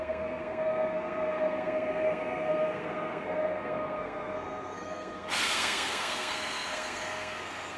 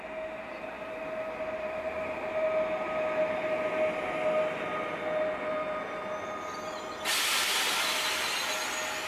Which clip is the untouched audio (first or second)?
second